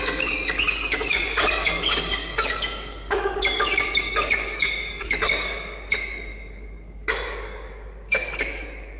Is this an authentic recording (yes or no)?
no